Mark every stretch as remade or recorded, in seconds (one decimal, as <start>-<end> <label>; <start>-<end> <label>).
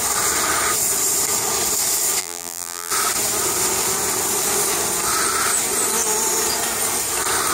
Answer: 0.0-2.2 recorded; 2.2-2.9 remade; 2.9-7.5 recorded